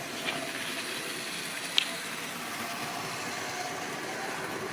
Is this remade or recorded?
recorded